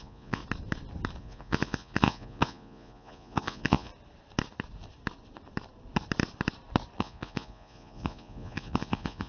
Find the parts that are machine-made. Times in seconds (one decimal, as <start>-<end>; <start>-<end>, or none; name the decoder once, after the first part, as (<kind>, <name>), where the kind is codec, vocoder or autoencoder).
0.0-0.4 (vocoder, Vocos); 1.2-3.9; 7.0-9.3